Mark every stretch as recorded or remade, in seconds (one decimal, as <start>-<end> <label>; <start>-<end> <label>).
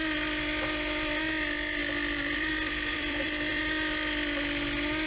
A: 0.0-1.8 recorded; 1.8-3.6 remade; 3.6-5.1 recorded